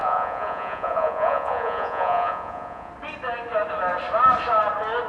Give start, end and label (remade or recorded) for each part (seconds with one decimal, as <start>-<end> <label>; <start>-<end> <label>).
0.0-2.9 remade; 2.9-5.1 recorded